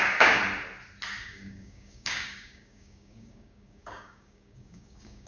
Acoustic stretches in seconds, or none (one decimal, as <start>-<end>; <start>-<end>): 0.4-1.2